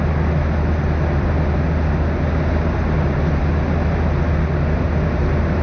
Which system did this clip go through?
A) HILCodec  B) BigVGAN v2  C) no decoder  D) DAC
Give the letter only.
C